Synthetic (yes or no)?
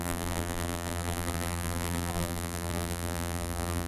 yes